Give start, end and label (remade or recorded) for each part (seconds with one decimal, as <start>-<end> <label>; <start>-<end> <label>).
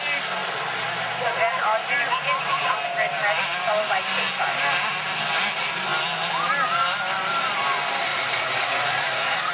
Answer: 0.0-8.1 recorded; 8.1-9.5 remade